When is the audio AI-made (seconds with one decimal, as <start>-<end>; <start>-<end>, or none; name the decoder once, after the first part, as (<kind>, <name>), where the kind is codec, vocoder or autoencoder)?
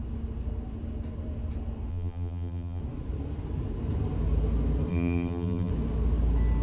1.9-2.8 (vocoder, BigVGAN v2); 4.9-5.7